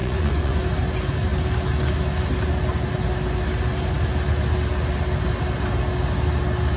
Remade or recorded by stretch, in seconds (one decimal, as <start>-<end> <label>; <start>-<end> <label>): 0.0-0.6 remade; 0.6-6.8 recorded

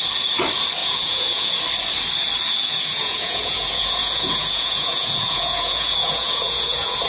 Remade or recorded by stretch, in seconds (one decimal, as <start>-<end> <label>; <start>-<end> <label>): 0.0-0.8 recorded; 0.8-1.6 remade; 1.6-2.6 recorded; 2.6-7.1 remade